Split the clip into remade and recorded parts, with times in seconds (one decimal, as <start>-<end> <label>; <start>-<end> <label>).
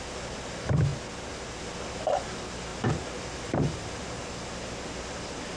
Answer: 0.0-2.7 recorded; 2.7-4.2 remade; 4.2-5.6 recorded